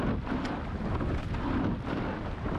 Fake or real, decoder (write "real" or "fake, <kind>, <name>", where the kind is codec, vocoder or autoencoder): real